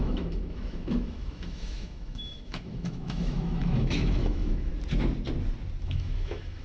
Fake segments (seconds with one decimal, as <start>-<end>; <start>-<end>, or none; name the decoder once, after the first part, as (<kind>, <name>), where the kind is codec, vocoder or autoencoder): 0.0-4.7 (autoencoder, DAC-VAE); 5.8-6.6